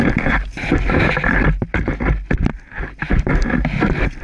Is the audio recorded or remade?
recorded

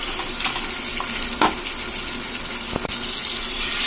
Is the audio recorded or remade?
recorded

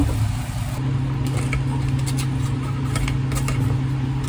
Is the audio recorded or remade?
recorded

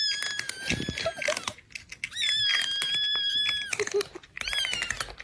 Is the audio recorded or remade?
recorded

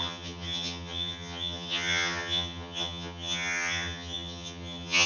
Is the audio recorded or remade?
remade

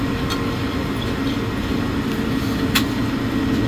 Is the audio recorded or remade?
recorded